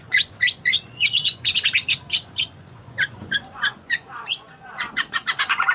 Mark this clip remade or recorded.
remade